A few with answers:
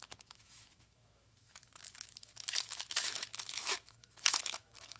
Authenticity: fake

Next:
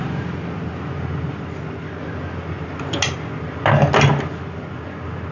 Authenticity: real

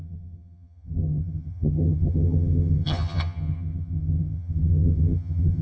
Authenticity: fake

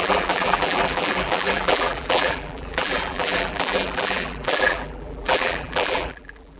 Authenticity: fake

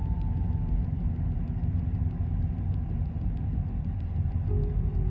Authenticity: fake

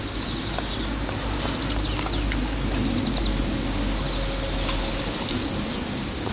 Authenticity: real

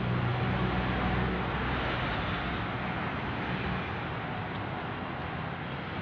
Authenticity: real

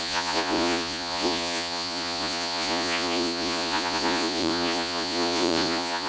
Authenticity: fake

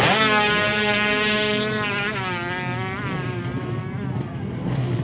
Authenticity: real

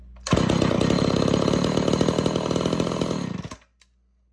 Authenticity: real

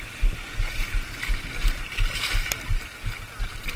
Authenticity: real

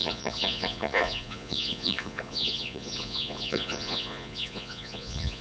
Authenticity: fake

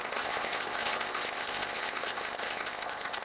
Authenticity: fake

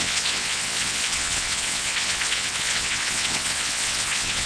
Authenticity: fake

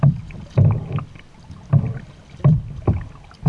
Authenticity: real